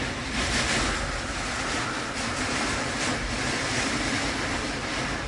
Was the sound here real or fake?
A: real